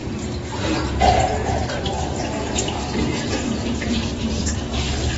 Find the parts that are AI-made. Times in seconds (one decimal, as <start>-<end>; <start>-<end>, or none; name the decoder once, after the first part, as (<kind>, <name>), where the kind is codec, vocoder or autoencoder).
0.0-0.8 (vocoder, BigVGAN v2); 1.3-4.4